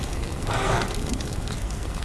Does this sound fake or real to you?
fake